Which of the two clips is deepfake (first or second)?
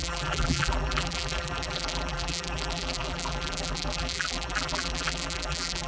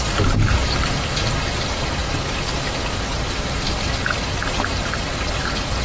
first